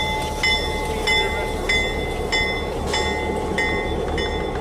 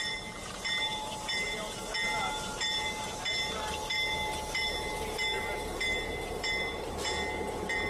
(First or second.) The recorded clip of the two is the first